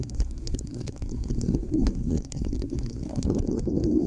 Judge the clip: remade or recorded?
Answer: remade